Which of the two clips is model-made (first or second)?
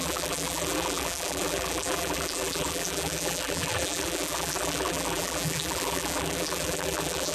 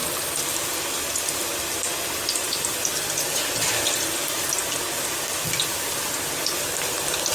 first